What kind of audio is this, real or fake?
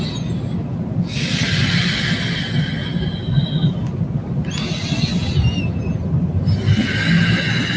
real